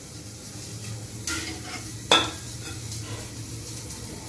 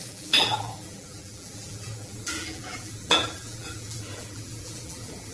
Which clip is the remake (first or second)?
second